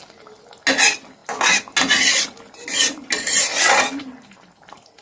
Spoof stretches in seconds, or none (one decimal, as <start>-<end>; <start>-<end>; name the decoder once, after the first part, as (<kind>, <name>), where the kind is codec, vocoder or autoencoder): none